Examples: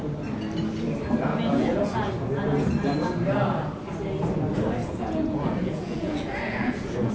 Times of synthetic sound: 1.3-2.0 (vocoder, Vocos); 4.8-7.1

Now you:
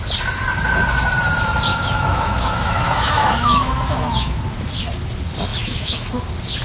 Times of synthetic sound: 1.7-4.4 (autoencoder, DAC-VAE); 5.5-6.1

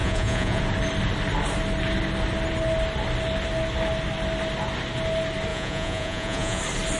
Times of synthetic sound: 0.0-0.6 (vocoder, Vocos); 5.5-6.6

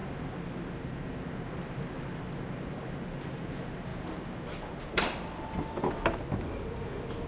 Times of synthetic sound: none

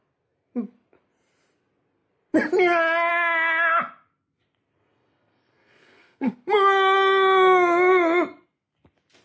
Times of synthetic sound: 4.8-6.3 (codec, SNAC)

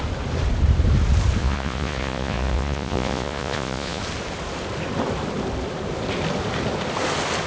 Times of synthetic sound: 1.4-4.0 (vocoder, Vocos)

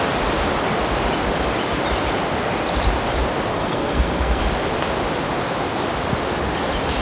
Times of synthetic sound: 3.5-4.4 (codec, SNAC)

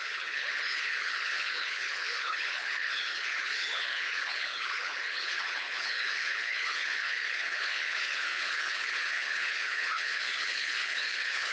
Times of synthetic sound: 0.0-11.5 (codec, HILCodec)